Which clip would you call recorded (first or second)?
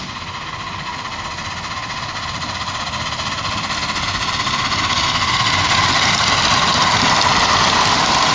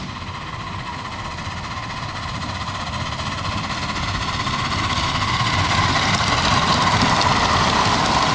first